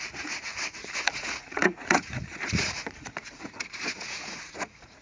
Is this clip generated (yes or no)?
yes